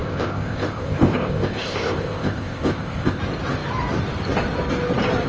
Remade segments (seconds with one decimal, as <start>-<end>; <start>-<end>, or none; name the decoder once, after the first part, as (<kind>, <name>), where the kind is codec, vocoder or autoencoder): 0.0-3.2 (codec, ZipCodec)